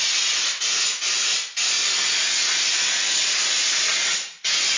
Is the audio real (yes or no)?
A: yes